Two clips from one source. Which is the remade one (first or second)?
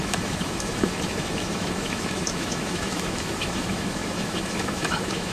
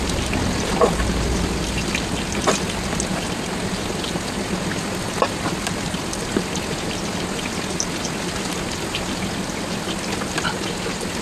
first